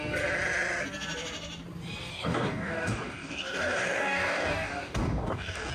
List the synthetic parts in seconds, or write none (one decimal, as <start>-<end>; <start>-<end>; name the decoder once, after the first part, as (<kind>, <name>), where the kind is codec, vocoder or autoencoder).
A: 2.1-5.7 (codec, DAC)